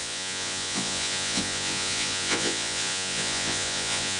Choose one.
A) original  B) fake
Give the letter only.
B